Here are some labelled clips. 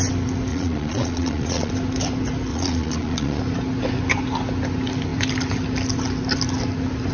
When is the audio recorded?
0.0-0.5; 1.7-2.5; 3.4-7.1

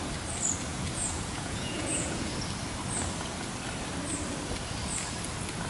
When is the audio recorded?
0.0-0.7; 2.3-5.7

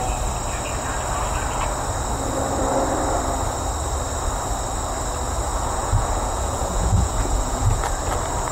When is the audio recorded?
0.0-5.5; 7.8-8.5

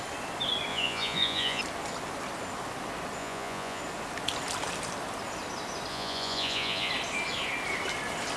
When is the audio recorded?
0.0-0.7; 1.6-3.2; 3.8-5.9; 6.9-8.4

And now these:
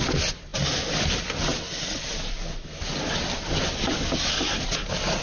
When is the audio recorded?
0.0-5.2